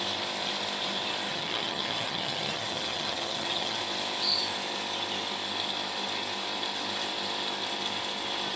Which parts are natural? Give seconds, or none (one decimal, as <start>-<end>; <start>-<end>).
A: 0.0-1.3; 3.8-8.6